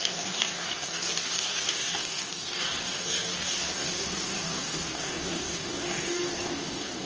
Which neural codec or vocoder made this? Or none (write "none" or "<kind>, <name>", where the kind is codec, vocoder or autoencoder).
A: codec, DAC